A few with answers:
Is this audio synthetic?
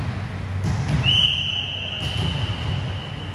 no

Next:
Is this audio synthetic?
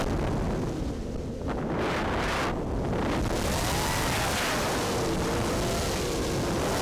no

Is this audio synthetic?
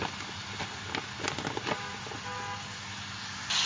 no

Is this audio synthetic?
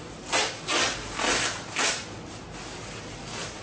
no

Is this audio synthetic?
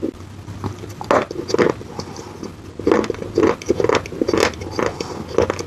no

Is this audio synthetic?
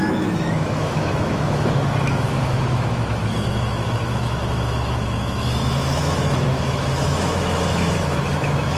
yes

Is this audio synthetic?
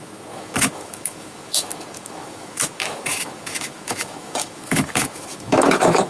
yes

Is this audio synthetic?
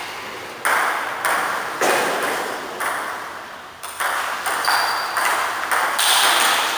no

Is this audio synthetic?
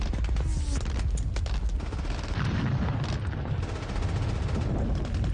no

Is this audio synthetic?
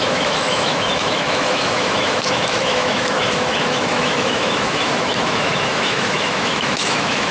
yes